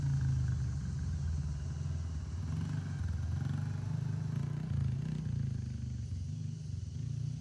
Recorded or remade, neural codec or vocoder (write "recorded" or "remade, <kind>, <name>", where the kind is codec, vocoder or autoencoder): recorded